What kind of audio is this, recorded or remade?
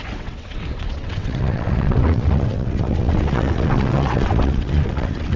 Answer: remade